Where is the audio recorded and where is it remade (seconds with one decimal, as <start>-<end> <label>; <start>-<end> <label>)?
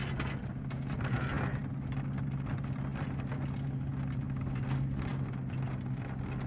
0.0-6.5 recorded